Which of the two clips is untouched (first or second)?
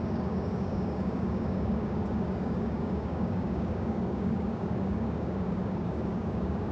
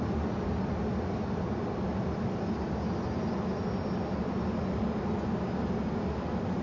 second